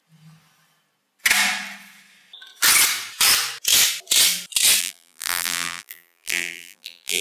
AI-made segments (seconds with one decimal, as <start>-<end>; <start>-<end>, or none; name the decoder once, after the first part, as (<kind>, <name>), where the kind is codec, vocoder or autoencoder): 4.8-7.2 (vocoder, BigVGAN v2)